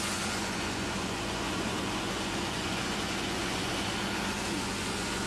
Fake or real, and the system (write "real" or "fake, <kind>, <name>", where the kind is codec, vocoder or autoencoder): fake, vocoder, Vocos